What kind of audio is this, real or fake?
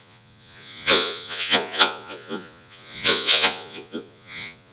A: fake